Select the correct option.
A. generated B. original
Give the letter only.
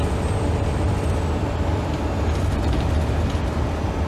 B